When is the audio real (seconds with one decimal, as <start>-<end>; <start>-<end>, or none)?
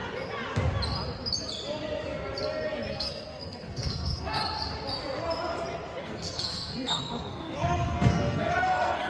0.0-2.9; 4.4-6.0